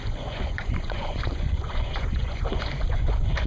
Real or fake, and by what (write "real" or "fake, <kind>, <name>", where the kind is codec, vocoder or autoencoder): fake, vocoder, Vocos